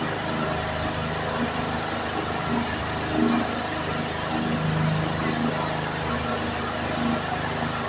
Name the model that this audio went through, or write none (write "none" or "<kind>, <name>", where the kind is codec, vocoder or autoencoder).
none